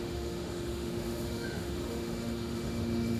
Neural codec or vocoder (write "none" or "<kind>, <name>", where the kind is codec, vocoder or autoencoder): autoencoder, DAC-VAE